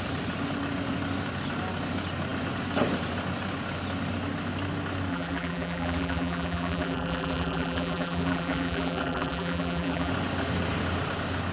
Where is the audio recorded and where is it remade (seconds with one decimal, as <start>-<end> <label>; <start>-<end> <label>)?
0.0-5.1 recorded; 5.1-10.1 remade; 10.1-11.5 recorded